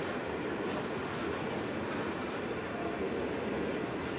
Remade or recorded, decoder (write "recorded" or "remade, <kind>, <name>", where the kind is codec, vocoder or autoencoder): recorded